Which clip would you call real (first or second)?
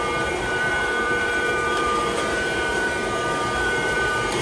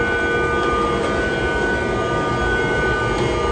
second